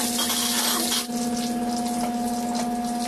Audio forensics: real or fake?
real